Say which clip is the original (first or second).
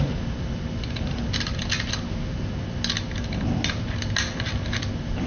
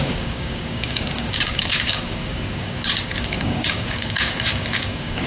first